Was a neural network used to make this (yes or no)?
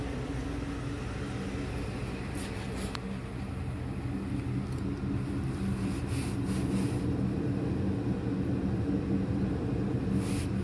no